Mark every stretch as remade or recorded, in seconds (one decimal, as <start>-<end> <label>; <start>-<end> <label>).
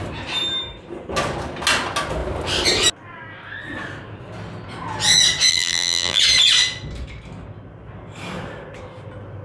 0.0-5.5 recorded; 5.5-6.2 remade; 6.2-9.4 recorded